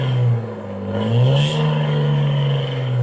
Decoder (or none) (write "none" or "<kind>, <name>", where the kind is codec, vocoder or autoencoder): codec, DAC